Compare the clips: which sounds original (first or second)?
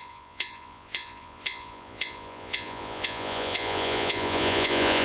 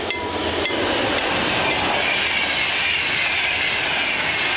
second